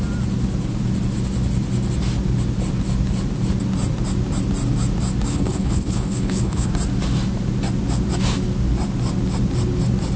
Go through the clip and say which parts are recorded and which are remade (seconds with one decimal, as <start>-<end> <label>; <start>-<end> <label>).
0.0-5.3 recorded; 5.3-6.7 remade; 6.7-10.2 recorded